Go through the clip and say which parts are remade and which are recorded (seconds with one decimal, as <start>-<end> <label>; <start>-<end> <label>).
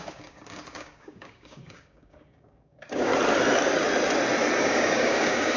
0.0-3.1 remade; 3.1-4.6 recorded; 4.6-5.6 remade